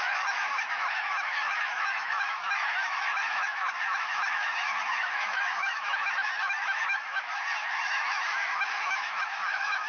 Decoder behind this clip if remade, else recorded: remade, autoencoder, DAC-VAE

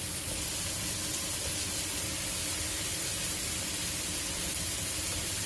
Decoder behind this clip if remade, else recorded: recorded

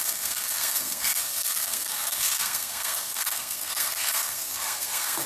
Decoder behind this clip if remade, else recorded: remade, codec, SNAC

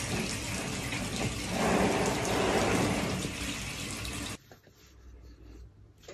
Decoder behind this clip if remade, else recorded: recorded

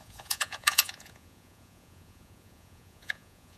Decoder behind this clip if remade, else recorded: remade, vocoder, Vocos